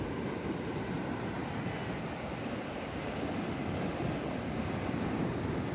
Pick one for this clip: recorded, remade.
recorded